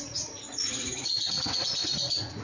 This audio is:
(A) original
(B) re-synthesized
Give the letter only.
B